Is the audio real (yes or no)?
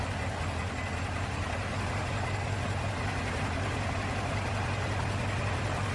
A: yes